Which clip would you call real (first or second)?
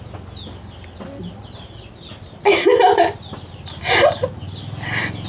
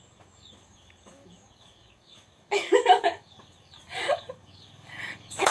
first